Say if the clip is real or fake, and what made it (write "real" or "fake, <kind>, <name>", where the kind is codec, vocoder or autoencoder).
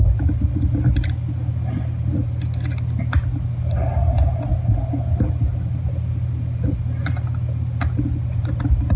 real